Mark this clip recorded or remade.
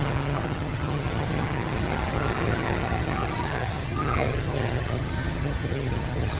remade